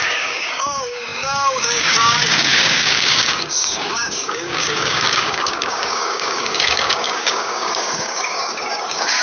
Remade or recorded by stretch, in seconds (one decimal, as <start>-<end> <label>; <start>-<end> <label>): 0.0-9.2 remade